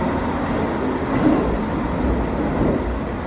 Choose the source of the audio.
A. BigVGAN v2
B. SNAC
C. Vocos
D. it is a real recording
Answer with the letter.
D